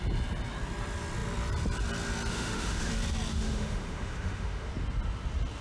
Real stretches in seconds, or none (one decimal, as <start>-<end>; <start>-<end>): 0.0-2.3; 2.9-3.3; 4.7-5.6